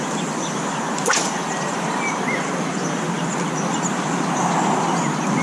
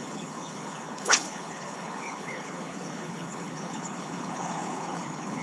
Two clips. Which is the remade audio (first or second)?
second